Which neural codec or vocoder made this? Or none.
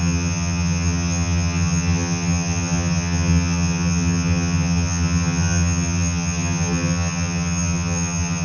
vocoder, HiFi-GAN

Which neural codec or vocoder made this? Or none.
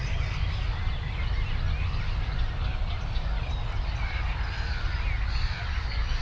none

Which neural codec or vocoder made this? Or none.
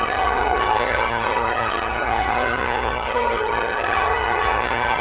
vocoder, HiFi-GAN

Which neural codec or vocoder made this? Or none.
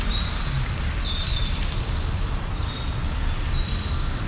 none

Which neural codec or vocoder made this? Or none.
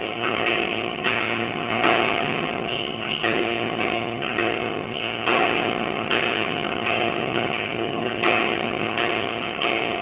vocoder, HiFi-GAN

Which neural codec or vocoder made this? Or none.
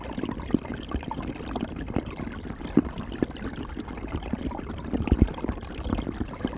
none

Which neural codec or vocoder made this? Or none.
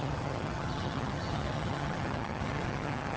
vocoder, HiFi-GAN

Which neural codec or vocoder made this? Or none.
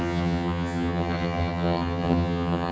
vocoder, HiFi-GAN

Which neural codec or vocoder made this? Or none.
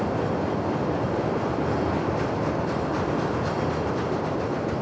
none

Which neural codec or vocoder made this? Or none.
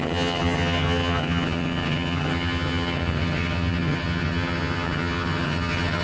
vocoder, HiFi-GAN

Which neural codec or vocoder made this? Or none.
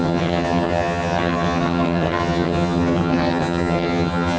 vocoder, HiFi-GAN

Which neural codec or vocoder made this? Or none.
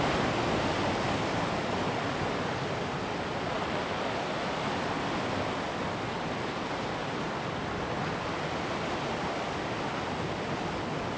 none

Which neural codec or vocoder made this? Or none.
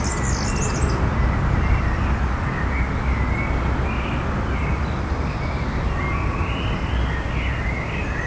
none